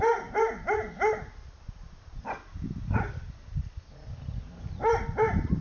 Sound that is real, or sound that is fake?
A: real